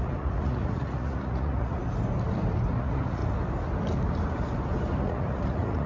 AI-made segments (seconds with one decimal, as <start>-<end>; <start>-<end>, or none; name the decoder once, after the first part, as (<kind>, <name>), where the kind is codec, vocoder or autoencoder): 0.0-1.8 (vocoder, Vocos); 2.8-3.2; 5.0-5.9